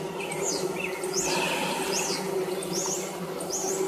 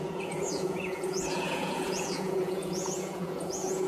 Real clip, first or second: first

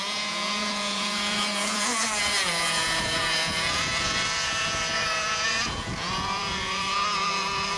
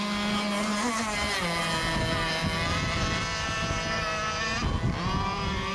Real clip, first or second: second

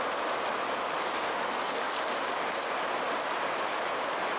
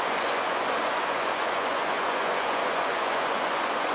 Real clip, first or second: first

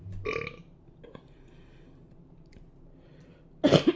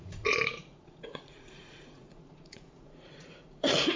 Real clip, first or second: first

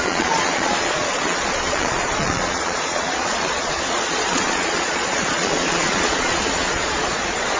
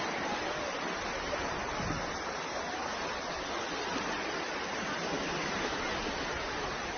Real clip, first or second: second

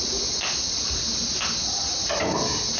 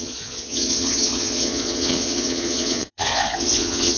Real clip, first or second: first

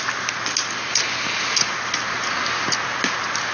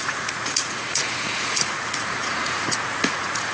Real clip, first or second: first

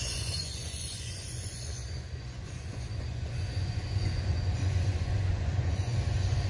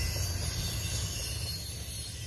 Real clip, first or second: second